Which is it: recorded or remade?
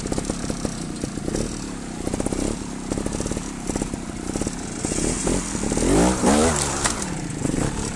recorded